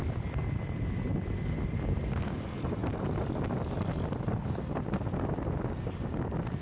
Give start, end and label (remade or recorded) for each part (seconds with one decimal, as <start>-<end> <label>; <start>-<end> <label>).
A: 0.0-6.6 recorded